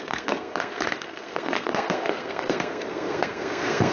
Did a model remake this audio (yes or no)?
yes